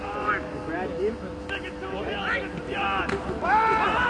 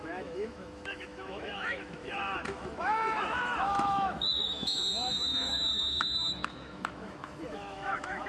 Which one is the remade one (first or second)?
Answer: second